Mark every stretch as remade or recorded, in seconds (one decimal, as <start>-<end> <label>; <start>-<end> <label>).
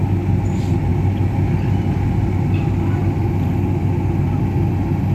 0.0-5.1 recorded